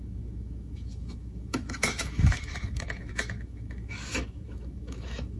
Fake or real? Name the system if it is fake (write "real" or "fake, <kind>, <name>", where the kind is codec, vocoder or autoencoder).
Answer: fake, autoencoder, DAC-VAE